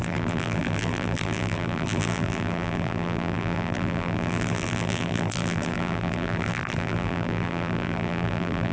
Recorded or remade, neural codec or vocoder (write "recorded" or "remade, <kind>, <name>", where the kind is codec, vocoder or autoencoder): remade, vocoder, BigVGAN v2